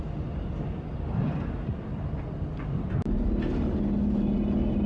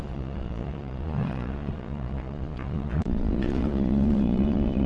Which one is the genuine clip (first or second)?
first